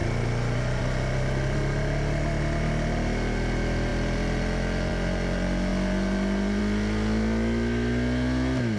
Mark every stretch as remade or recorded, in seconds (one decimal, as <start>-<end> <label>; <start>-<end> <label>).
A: 0.0-8.8 recorded